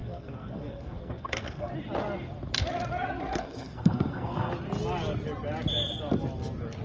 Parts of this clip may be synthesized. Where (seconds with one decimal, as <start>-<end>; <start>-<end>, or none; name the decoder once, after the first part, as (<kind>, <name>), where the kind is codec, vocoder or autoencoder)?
0.0-1.7 (codec, SNAC); 3.3-4.5

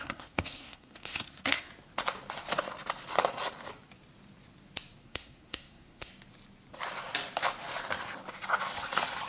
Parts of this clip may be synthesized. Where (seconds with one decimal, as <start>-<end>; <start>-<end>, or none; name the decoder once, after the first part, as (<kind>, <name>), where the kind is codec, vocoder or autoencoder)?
0.0-1.7 (codec, SNAC); 5.0-6.1

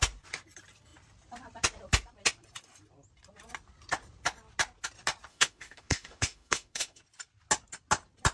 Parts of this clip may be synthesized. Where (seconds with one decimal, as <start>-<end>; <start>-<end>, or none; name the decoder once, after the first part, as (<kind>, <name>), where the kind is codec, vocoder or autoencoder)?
5.3-7.0 (autoencoder, DAC-VAE)

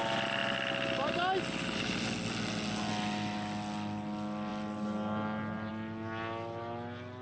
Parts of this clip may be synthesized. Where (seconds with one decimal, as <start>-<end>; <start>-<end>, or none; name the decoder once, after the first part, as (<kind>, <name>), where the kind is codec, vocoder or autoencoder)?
none

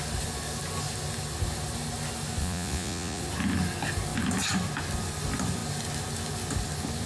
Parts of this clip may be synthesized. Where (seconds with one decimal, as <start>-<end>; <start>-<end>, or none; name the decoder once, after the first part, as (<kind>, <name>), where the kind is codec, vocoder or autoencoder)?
2.4-3.2 (vocoder, Vocos)

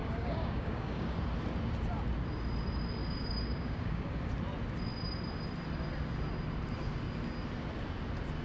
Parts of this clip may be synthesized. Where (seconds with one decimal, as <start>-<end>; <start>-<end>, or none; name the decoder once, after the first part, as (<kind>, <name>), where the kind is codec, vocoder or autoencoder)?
0.0-1.2 (codec, DAC); 3.0-4.2